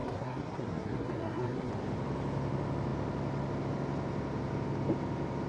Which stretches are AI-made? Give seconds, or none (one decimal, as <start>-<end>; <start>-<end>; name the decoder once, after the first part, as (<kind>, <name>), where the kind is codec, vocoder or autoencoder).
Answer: 0.0-1.7 (codec, SNAC)